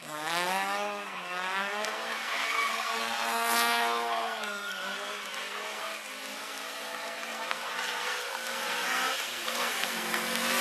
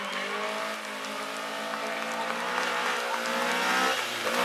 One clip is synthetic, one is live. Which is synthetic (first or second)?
first